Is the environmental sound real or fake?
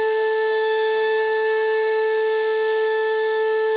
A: fake